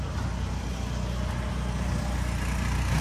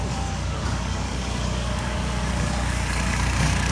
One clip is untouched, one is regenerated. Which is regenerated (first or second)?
second